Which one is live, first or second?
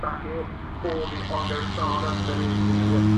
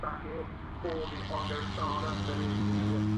first